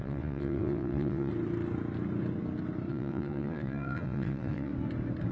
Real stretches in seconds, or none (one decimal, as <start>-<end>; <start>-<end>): 1.3-2.9; 4.7-5.3

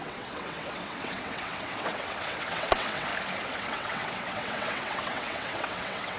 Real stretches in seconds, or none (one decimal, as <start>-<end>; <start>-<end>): 3.1-3.6

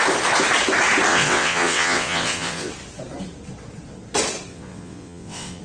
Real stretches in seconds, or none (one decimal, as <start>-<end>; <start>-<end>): 0.0-1.1; 2.7-4.5

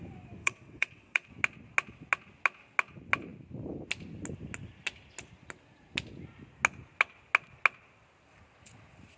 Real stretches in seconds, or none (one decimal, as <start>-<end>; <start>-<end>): 0.0-0.4; 1.3-9.2

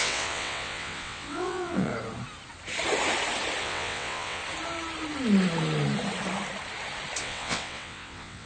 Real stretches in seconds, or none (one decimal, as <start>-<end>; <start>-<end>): 1.9-3.6; 4.4-7.2

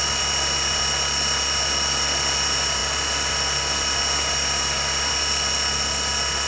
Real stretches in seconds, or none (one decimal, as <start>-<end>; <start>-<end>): 0.0-6.5

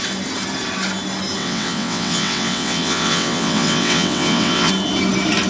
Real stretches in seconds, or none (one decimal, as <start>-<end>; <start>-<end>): 0.0-1.4; 4.7-5.5